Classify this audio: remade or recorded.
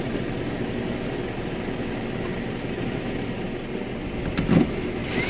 recorded